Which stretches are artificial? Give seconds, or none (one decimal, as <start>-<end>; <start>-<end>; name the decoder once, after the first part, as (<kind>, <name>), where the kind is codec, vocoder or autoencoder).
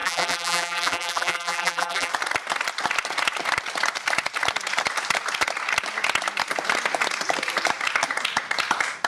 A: 0.0-2.1 (vocoder, BigVGAN v2)